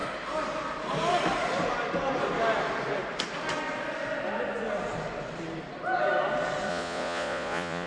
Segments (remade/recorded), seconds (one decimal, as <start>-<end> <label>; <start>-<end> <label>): 0.0-6.7 recorded; 6.7-7.9 remade